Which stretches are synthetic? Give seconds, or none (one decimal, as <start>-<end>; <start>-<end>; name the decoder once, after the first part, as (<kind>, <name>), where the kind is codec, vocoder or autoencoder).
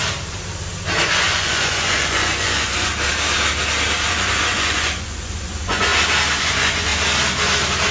1.0-2.9 (vocoder, Vocos); 4.1-5.9; 6.4-6.9